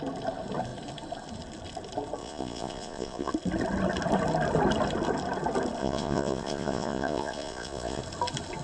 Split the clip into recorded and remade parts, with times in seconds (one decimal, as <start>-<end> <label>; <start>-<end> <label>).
0.0-2.2 recorded; 2.2-3.3 remade; 3.3-5.8 recorded; 5.8-8.0 remade; 8.0-8.6 recorded